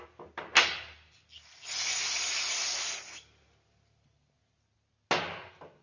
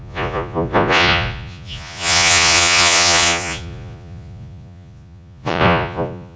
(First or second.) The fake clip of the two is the second